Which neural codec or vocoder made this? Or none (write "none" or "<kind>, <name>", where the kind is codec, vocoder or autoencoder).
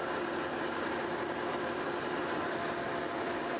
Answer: vocoder, BigVGAN v2